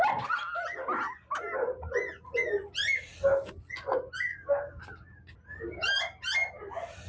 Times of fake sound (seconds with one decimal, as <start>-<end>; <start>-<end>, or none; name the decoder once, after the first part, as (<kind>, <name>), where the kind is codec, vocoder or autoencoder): 4.3-4.8 (codec, DAC)